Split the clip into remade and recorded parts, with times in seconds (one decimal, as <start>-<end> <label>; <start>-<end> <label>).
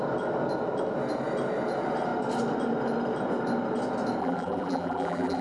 0.0-4.2 recorded; 4.2-5.4 remade